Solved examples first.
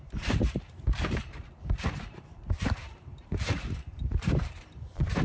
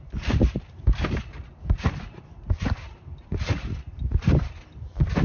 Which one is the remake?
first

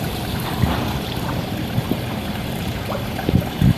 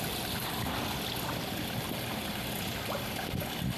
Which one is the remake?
first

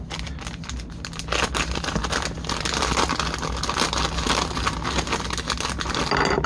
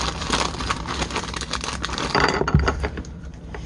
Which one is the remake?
second